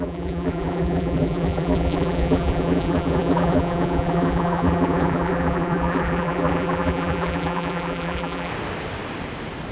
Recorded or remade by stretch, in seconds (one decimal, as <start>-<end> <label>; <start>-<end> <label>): 0.0-8.5 remade; 8.5-9.7 recorded